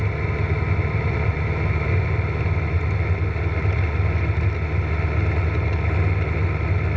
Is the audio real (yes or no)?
yes